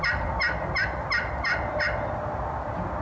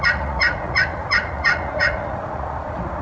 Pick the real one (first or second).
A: first